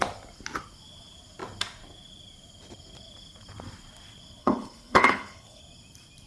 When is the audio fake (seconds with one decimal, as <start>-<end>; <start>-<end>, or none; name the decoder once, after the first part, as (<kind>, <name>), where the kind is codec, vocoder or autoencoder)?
4.4-5.6 (codec, HILCodec)